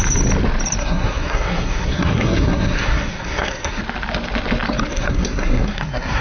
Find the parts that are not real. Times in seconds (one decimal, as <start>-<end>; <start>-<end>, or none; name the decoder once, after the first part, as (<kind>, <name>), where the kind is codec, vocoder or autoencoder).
0.8-3.8 (codec, SNAC); 4.9-6.2